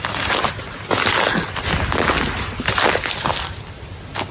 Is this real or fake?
real